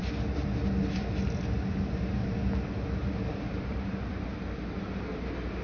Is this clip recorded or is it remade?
recorded